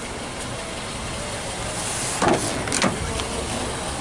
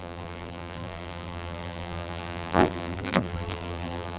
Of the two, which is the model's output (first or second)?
second